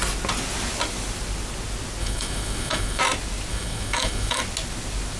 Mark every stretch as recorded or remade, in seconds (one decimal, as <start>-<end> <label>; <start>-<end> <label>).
0.0-2.0 recorded; 2.0-3.0 remade; 3.0-3.5 recorded; 3.5-4.4 remade; 4.4-5.2 recorded